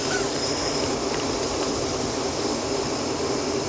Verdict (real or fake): real